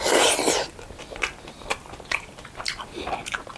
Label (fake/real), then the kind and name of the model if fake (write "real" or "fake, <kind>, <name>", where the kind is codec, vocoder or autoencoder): real